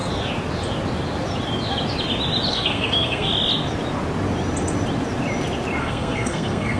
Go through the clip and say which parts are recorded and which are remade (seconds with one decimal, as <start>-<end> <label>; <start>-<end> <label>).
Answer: 0.0-2.5 recorded; 2.5-3.3 remade; 3.3-5.8 recorded; 5.8-6.8 remade